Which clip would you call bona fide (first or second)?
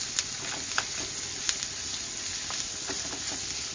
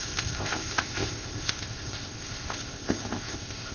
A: first